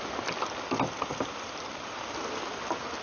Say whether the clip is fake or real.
real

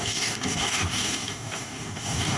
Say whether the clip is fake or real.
fake